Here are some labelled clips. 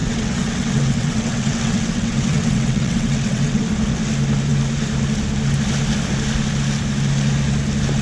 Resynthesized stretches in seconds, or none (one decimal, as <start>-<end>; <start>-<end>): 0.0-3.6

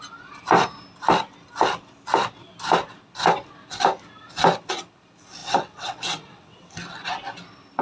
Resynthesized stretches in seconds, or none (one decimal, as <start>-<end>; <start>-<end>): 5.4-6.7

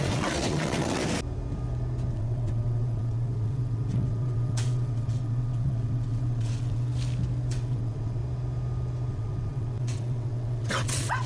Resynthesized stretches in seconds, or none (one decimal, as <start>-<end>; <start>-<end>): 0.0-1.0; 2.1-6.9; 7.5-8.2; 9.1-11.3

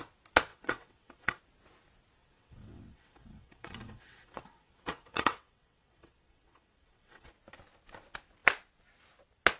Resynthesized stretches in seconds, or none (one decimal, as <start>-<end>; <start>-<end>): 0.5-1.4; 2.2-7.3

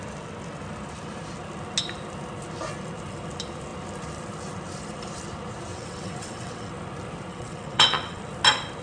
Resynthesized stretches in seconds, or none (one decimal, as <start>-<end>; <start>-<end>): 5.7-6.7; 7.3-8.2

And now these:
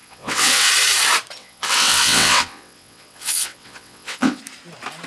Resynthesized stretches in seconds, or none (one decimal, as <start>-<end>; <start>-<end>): 0.0-0.7; 1.4-4.4

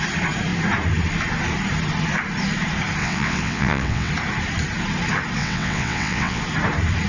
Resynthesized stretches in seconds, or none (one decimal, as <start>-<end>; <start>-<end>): 3.0-4.1; 5.4-6.4